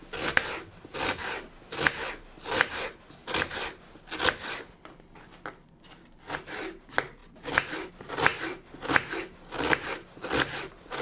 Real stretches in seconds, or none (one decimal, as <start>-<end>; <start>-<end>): 0.0-11.0